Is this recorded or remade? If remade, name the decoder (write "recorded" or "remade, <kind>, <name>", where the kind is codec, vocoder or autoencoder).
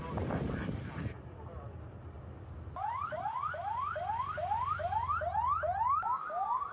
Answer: recorded